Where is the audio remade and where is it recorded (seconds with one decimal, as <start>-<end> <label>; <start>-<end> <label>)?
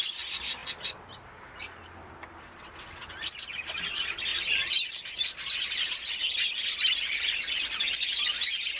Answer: 0.0-8.8 recorded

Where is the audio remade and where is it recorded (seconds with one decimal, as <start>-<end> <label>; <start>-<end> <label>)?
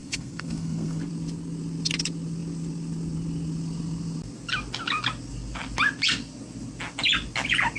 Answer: 0.0-1.1 remade; 1.1-7.8 recorded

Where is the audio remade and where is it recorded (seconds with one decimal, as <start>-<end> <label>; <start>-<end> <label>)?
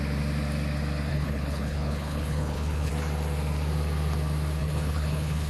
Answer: 0.0-1.1 recorded; 1.1-2.9 remade; 2.9-4.6 recorded; 4.6-5.5 remade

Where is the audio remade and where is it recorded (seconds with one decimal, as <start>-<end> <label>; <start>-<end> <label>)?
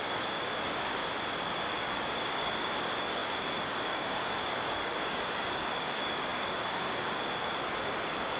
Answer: 0.0-1.0 remade; 1.0-1.5 recorded; 1.5-8.4 remade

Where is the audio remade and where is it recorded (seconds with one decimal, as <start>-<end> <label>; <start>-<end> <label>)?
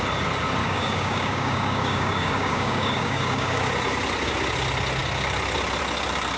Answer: 0.0-0.6 recorded; 0.6-3.6 remade; 3.6-6.4 recorded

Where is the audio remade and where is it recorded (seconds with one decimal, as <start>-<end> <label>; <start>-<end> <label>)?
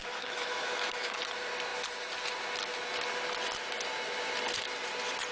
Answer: 0.0-1.2 remade; 1.2-5.3 recorded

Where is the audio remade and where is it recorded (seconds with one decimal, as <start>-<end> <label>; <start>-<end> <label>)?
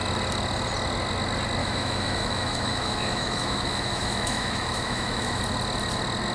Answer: 0.0-1.6 recorded; 1.6-5.4 remade; 5.4-6.3 recorded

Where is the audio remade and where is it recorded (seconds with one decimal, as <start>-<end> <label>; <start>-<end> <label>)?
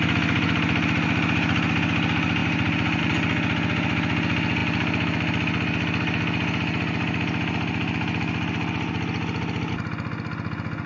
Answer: 0.0-10.9 recorded